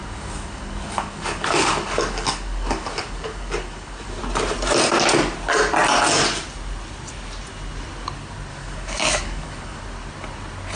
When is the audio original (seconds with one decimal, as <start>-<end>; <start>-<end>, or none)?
4.2-8.5; 9.8-10.8